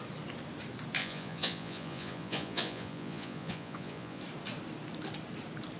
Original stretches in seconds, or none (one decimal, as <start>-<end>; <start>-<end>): 0.0-1.0; 4.2-5.8